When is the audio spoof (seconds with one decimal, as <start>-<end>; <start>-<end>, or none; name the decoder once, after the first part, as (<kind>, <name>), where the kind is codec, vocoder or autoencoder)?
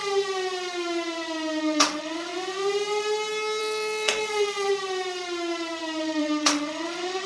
1.6-2.3 (vocoder, WaveNeXt); 3.6-4.7; 6.0-7.3